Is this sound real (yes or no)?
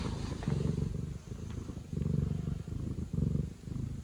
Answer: yes